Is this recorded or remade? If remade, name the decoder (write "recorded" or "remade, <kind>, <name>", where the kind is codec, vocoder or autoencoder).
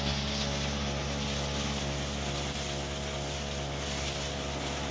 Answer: recorded